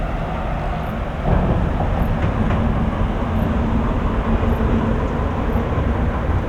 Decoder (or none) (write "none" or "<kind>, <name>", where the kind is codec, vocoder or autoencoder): none